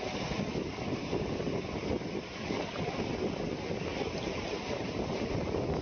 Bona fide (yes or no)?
yes